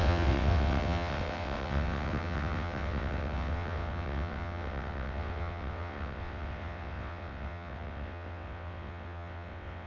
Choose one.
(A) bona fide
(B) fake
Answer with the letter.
B